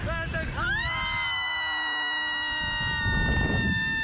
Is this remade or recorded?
recorded